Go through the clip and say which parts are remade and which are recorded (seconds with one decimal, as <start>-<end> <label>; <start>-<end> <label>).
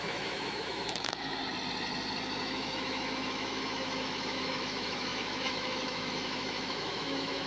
0.0-1.4 remade; 1.4-2.4 recorded; 2.4-7.5 remade